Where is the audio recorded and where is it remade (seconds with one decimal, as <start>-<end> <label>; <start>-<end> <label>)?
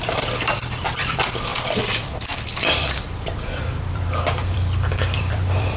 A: 0.0-5.8 remade